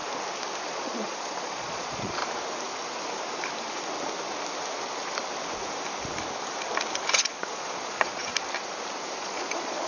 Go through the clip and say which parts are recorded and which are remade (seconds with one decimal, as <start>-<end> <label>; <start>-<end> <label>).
0.0-0.7 recorded; 0.7-2.2 remade; 2.2-7.1 recorded; 7.1-8.3 remade; 8.3-9.2 recorded; 9.2-9.9 remade